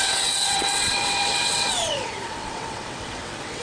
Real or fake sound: fake